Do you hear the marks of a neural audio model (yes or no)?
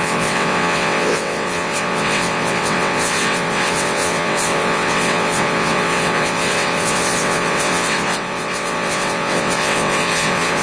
yes